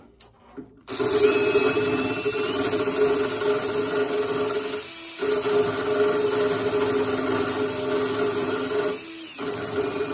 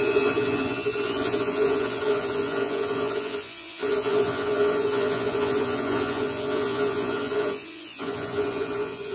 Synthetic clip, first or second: second